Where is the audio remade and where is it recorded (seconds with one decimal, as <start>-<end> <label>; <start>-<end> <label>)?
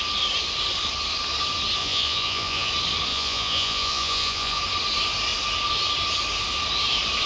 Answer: 0.0-1.8 recorded; 1.8-2.7 remade; 2.7-3.1 recorded; 3.1-4.6 remade; 4.6-7.3 recorded